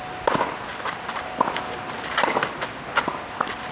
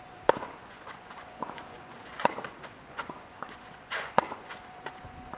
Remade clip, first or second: second